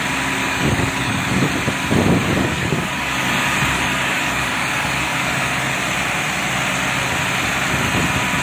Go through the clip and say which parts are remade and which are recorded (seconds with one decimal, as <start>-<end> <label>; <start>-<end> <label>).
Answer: 0.0-0.4 recorded; 0.4-1.5 remade; 1.5-2.2 recorded; 2.2-5.7 remade; 5.7-8.4 recorded